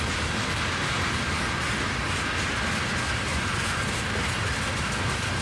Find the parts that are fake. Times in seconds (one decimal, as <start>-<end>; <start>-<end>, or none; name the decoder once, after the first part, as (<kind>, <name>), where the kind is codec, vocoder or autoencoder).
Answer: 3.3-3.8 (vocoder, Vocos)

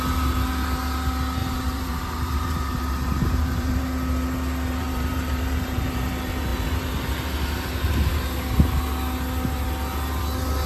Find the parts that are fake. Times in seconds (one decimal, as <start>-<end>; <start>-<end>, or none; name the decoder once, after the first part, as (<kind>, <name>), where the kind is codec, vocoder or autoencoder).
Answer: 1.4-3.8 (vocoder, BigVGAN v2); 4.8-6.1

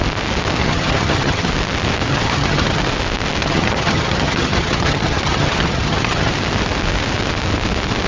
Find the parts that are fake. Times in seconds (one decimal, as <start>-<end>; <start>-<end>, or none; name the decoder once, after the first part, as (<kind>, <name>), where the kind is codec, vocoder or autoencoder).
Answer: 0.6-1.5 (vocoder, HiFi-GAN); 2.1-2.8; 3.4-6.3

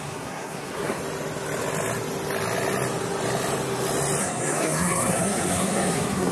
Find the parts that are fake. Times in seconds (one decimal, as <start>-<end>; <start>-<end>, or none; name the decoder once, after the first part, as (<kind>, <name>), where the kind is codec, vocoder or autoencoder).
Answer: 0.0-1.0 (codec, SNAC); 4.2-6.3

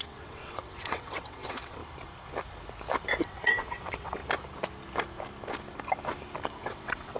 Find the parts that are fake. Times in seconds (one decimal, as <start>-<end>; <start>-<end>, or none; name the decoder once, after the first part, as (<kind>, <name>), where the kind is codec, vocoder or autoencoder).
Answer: 0.0-1.8 (vocoder, WaveNeXt); 3.2-4.2; 6.6-7.2

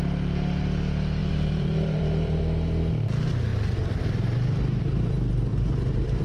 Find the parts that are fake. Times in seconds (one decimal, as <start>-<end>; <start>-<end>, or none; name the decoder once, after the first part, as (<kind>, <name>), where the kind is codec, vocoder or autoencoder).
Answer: 1.2-2.4 (vocoder, BigVGAN v2); 5.5-6.2